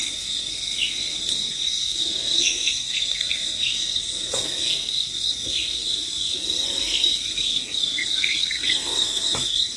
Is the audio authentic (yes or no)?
no